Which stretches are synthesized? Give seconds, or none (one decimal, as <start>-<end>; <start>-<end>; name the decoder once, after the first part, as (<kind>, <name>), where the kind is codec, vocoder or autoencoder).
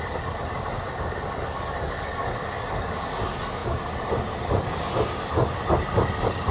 none